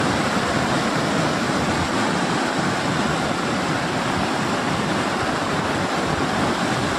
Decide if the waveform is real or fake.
real